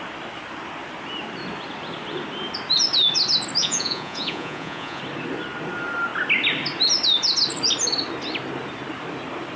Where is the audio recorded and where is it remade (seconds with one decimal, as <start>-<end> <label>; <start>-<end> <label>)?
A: 0.0-3.6 recorded; 3.6-5.0 remade; 5.0-9.6 recorded